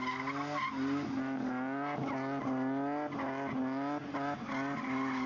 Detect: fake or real real